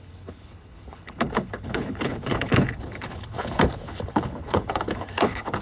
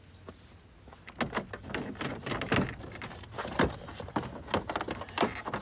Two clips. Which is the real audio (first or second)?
second